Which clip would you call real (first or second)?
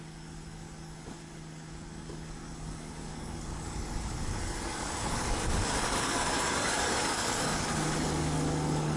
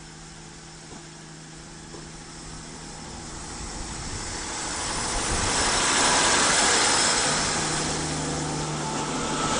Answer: second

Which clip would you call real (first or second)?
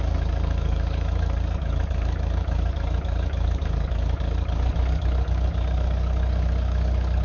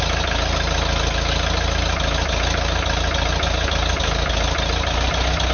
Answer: second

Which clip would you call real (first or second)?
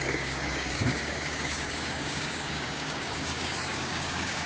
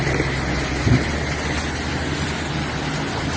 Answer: second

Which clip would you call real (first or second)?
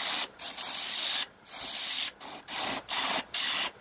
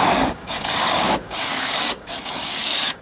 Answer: first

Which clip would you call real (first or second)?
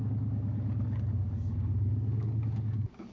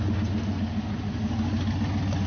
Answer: second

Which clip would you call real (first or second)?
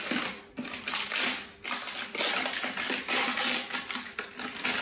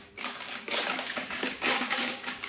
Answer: first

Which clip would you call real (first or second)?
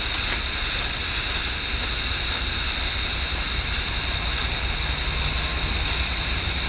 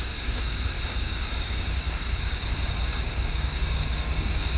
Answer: first